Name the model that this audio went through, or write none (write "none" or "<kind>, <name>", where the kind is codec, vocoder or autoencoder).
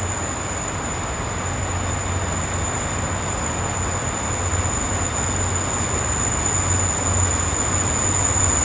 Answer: none